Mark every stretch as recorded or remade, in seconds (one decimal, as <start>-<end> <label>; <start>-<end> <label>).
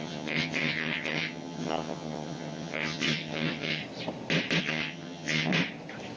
0.0-3.8 remade; 3.8-4.6 recorded; 4.6-5.5 remade; 5.5-6.2 recorded